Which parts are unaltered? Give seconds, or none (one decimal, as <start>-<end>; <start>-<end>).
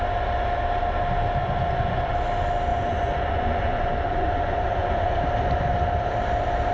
0.0-1.4; 2.1-2.7; 5.2-6.7